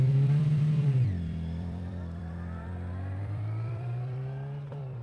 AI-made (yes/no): yes